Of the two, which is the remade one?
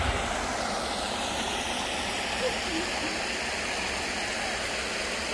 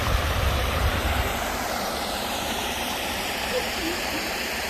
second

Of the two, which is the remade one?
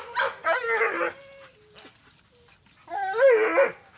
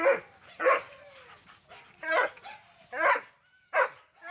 second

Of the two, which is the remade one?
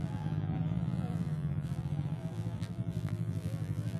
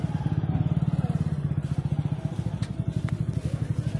first